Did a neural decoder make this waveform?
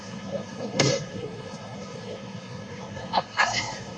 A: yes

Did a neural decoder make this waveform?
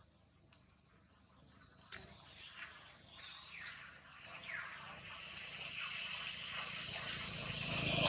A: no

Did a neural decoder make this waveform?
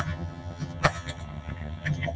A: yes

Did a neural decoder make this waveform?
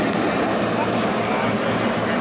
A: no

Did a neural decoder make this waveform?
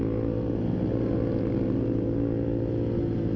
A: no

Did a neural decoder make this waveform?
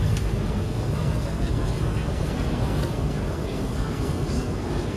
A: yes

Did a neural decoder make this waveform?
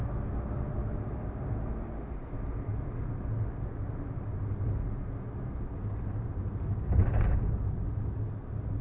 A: no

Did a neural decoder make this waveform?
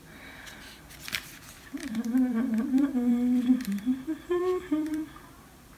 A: yes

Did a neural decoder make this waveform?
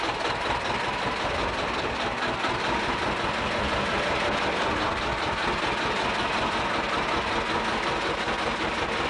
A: no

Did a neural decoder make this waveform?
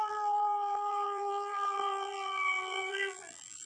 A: yes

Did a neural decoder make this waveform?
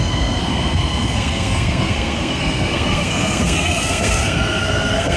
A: yes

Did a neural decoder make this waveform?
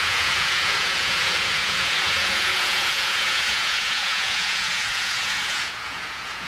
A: yes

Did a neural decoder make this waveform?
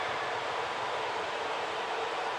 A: yes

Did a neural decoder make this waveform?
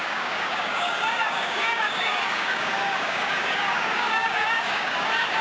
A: yes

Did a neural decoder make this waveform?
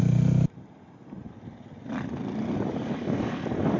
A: no